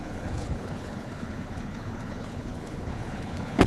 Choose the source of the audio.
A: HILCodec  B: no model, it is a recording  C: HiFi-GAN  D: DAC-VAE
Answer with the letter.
A